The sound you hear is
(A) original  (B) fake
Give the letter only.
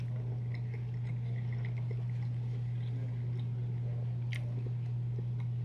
A